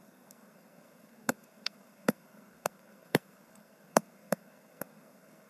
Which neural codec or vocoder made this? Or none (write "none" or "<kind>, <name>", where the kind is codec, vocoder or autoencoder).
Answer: codec, SNAC